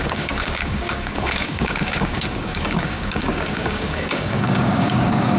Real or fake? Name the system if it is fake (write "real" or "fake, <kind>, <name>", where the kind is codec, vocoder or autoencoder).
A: fake, codec, DAC